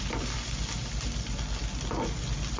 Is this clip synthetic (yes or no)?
no